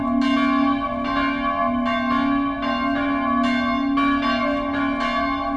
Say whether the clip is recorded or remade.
recorded